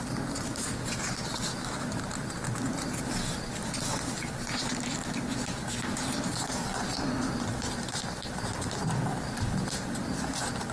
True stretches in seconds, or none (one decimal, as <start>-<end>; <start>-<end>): 0.0-1.5; 2.0-10.7